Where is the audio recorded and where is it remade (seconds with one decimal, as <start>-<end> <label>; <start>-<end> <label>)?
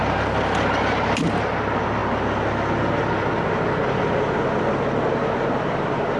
0.0-6.2 recorded